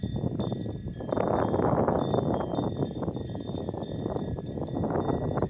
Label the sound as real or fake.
real